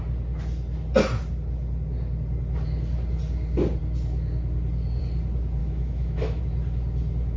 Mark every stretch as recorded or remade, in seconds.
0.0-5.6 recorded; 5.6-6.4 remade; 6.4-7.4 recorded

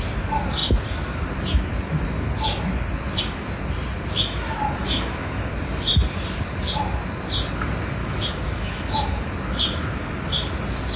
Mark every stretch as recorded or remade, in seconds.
0.0-4.8 recorded; 4.8-5.5 remade; 5.5-8.0 recorded; 8.0-9.3 remade; 9.3-11.0 recorded

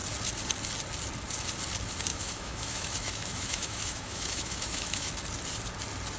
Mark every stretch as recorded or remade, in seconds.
0.0-2.1 recorded; 2.1-5.1 remade; 5.1-6.2 recorded